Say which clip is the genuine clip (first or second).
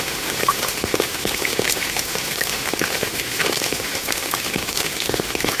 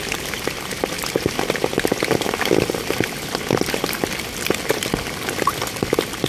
second